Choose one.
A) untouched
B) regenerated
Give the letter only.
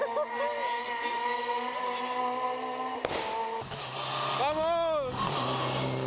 A